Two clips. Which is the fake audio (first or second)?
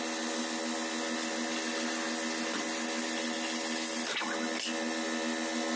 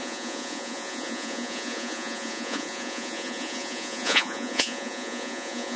second